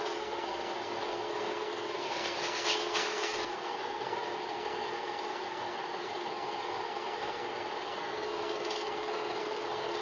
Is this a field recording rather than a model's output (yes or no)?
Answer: no